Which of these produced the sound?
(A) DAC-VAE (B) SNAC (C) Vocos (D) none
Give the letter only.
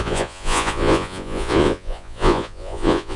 C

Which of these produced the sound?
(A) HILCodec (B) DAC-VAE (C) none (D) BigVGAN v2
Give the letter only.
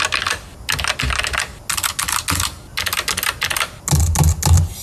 C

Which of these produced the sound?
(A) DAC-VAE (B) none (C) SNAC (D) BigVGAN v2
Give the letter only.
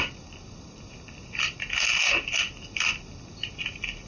B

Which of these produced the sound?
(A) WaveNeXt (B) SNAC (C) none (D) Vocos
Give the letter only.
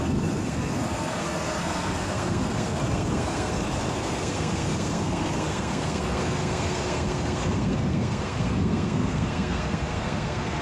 B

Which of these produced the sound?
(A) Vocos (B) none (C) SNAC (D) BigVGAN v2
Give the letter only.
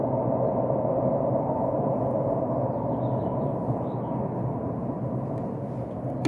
B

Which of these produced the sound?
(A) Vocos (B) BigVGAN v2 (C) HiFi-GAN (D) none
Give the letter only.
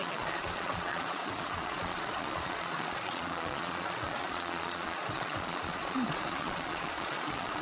A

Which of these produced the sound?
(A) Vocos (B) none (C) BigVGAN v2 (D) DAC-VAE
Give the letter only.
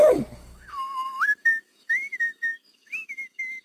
D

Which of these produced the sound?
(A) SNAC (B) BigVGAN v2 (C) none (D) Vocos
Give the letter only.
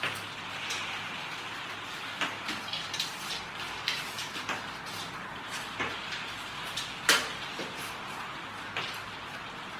C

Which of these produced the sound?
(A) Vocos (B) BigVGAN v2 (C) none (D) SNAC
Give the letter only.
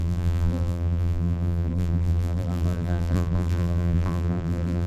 B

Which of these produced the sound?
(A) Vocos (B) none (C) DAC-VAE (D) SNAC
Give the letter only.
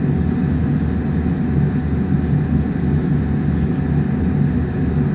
B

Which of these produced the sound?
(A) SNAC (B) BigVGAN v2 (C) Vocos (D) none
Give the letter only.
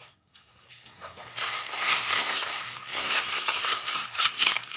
A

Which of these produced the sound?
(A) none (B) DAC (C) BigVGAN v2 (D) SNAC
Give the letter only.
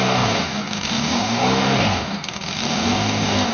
B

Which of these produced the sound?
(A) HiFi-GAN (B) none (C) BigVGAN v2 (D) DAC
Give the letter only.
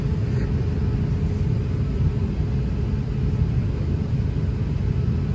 B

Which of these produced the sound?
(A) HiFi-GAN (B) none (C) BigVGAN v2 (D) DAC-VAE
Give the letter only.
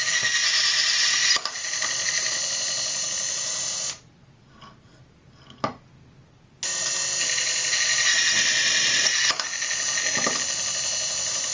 B